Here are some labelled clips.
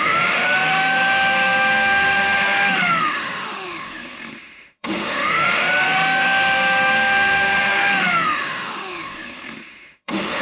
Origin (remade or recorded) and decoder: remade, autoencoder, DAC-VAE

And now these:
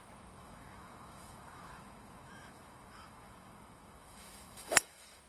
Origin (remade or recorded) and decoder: remade, autoencoder, DAC-VAE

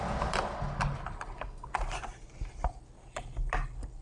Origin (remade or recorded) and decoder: recorded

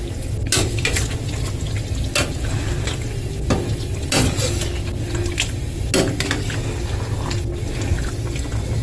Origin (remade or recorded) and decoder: recorded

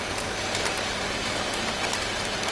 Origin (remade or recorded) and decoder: recorded